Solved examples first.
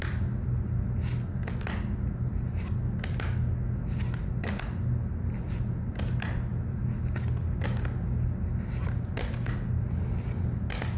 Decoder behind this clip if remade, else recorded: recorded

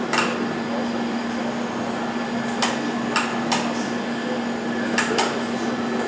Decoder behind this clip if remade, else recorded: recorded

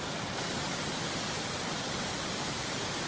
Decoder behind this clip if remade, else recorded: remade, vocoder, BigVGAN v2